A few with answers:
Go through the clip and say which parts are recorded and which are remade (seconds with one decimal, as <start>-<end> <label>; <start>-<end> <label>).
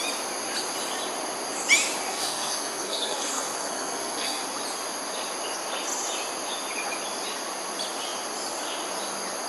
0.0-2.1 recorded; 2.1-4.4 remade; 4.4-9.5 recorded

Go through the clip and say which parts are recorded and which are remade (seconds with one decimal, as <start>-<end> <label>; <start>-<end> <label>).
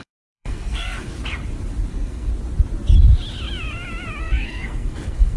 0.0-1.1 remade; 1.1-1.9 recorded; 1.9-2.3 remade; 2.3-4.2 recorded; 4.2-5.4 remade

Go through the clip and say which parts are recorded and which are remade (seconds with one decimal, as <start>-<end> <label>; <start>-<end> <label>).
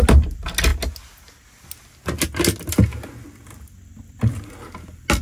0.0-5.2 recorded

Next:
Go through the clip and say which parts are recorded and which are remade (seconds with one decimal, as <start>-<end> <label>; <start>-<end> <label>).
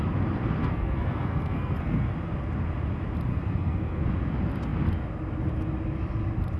0.0-0.6 recorded; 0.6-2.1 remade; 2.1-3.3 recorded; 3.3-4.0 remade; 4.0-6.6 recorded